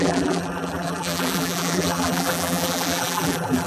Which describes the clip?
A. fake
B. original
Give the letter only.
A